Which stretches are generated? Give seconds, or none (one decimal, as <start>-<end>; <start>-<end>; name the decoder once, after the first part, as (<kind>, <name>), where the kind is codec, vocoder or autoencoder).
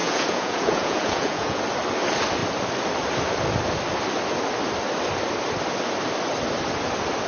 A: 0.0-1.6 (vocoder, Vocos)